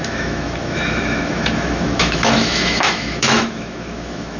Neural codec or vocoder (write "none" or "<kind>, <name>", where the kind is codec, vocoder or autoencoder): autoencoder, DAC-VAE